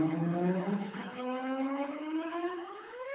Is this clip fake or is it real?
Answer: fake